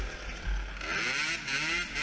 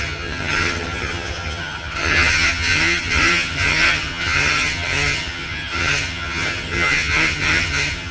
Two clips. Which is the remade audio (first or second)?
second